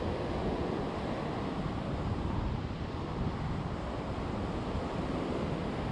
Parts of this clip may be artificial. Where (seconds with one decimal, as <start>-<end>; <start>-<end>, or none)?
0.4-0.9